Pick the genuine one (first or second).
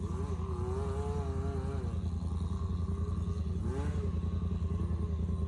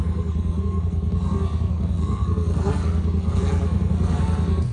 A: first